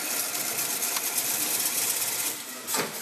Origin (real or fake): real